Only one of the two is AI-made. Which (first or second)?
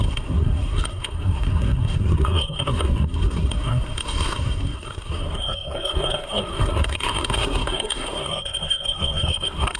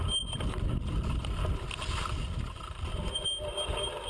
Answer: first